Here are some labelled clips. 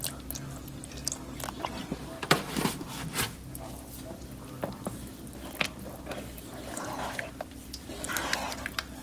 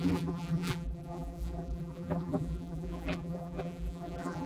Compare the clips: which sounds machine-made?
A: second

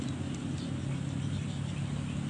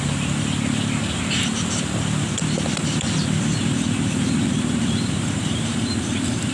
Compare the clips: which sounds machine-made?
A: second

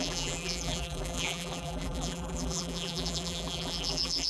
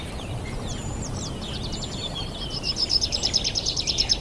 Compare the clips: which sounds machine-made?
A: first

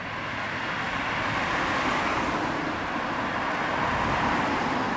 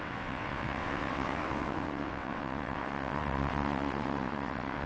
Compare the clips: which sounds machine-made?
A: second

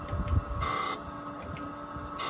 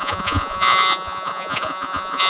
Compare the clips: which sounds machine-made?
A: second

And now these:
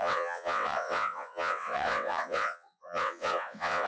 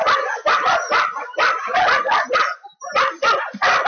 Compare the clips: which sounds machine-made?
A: first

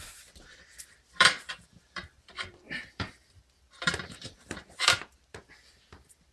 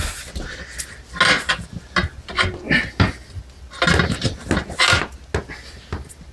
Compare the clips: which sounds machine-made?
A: first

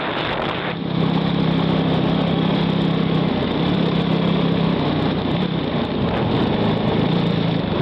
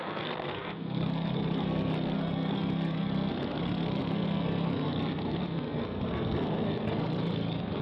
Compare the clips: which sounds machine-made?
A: second